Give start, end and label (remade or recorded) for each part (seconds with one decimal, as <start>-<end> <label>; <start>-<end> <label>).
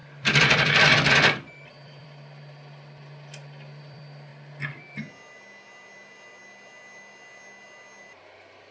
0.0-4.3 remade; 4.3-8.1 recorded; 8.1-8.7 remade